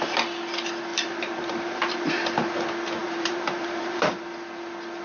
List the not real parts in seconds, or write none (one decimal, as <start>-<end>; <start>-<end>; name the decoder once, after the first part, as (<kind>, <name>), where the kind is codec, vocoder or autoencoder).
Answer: 0.9-2.5 (vocoder, BigVGAN v2); 3.0-4.2